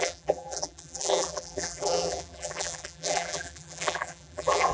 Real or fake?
fake